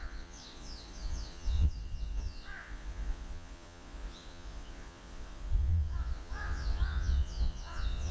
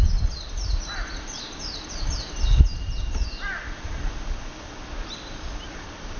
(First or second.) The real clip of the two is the second